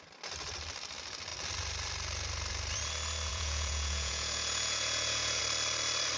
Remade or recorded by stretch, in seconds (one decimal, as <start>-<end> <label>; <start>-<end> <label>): 0.0-3.3 recorded; 3.3-5.4 remade; 5.4-6.2 recorded